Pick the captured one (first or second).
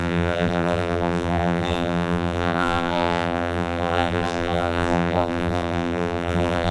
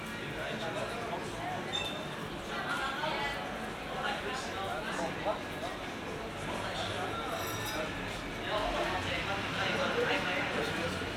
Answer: second